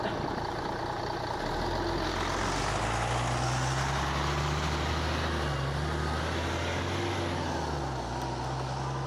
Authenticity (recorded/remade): recorded